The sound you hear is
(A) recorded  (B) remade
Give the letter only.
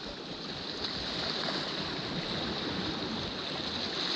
A